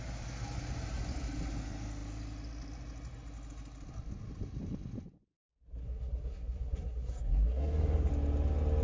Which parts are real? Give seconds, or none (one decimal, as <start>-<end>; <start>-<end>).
0.0-5.8; 8.1-8.8